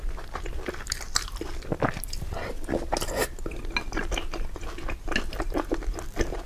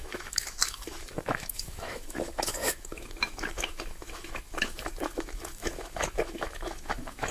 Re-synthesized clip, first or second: second